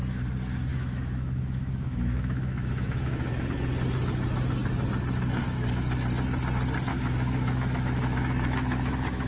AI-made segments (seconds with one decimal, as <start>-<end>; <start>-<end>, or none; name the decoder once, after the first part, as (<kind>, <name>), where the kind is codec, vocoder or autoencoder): 0.7-3.3 (autoencoder, DAC-VAE); 6.9-9.3